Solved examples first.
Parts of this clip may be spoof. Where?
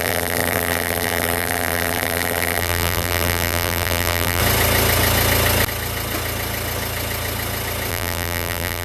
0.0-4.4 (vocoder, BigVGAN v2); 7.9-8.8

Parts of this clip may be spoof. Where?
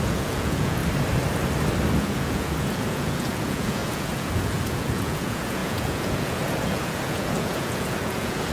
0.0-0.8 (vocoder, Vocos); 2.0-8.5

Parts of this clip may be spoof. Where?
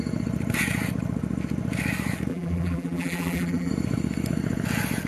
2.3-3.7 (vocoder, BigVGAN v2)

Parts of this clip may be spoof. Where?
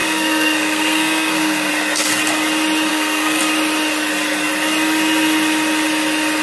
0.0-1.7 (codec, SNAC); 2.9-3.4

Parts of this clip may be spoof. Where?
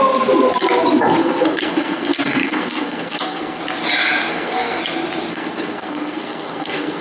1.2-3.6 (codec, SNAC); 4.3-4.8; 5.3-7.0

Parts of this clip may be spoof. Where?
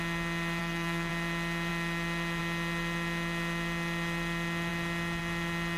0.6-1.1 (codec, SNAC)